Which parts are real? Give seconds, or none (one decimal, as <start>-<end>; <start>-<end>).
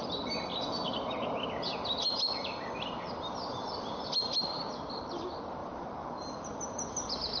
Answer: 0.0-7.4